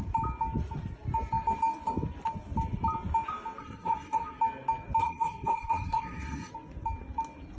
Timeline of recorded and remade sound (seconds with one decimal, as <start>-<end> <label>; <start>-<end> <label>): 0.0-3.6 recorded; 3.6-4.4 remade; 4.4-5.0 recorded; 5.0-6.5 remade; 6.5-7.6 recorded